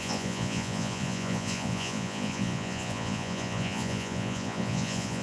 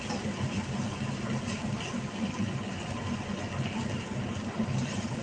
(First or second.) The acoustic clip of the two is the second